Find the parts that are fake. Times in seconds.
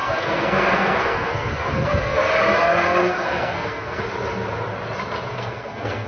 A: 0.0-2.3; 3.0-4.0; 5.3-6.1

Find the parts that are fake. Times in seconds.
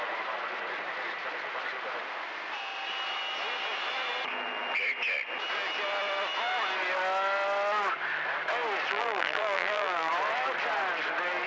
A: 8.9-10.1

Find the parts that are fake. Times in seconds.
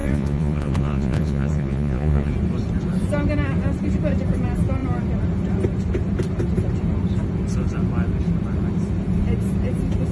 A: 0.0-2.3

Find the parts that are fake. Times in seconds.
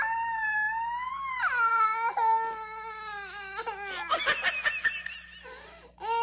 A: none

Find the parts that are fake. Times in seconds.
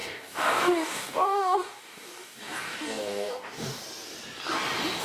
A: 0.0-3.8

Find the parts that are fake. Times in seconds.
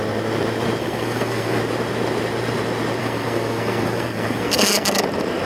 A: 0.8-1.6; 3.0-5.0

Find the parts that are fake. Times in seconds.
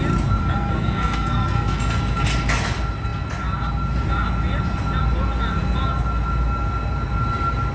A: 0.4-2.0